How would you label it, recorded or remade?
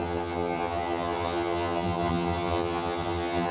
remade